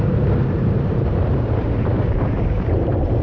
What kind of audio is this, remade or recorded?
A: remade